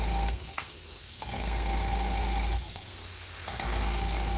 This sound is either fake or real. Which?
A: fake